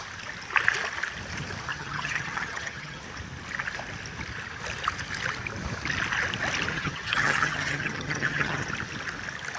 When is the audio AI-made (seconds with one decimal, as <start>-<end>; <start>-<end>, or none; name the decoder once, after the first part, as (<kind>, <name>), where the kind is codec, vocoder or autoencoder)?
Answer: 1.7-3.0 (vocoder, HiFi-GAN); 6.7-8.7